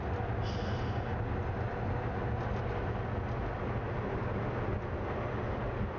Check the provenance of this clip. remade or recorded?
recorded